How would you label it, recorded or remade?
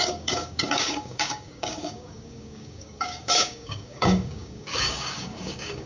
remade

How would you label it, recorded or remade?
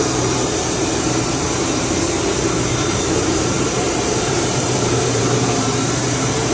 remade